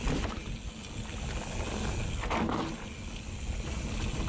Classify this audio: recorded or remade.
recorded